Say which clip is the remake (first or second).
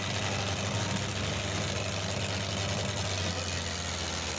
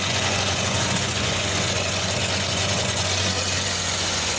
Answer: second